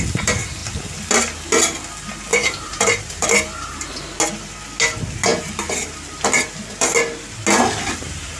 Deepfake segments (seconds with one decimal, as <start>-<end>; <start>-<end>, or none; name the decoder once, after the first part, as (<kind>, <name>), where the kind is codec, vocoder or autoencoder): 2.3-3.9 (vocoder, BigVGAN v2)